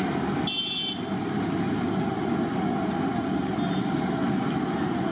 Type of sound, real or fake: real